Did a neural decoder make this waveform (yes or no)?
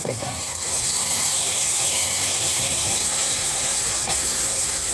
yes